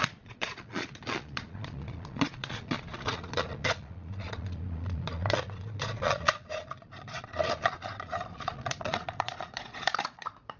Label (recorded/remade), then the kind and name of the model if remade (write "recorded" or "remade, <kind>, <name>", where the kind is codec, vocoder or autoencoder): remade, vocoder, Vocos